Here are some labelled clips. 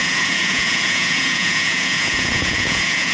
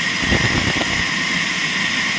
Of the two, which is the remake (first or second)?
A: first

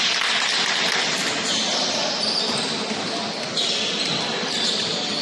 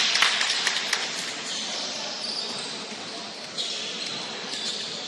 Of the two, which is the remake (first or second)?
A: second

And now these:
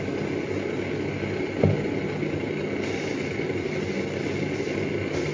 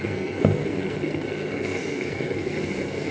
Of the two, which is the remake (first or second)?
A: second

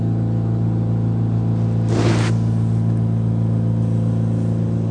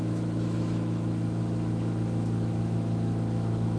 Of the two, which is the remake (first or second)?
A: second